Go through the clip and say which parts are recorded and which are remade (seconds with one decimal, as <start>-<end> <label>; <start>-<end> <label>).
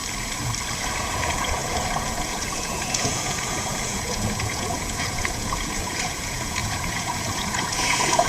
0.0-1.0 recorded; 1.0-8.3 remade